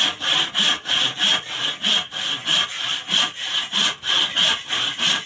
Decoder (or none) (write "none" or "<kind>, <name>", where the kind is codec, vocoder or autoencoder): none